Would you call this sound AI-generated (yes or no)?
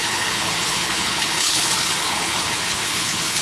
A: yes